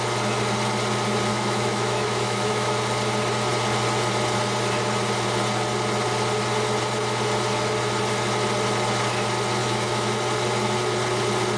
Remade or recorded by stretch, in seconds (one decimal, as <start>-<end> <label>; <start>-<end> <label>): 0.0-1.3 recorded; 1.3-2.7 remade; 2.7-9.6 recorded; 9.6-10.1 remade; 10.1-11.6 recorded